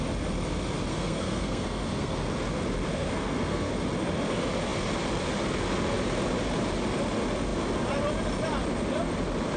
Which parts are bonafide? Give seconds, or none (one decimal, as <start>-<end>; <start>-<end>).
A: 0.0-0.9; 2.3-2.9; 3.7-9.6